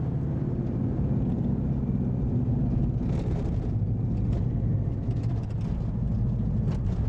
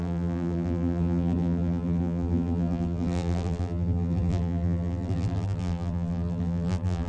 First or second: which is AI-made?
second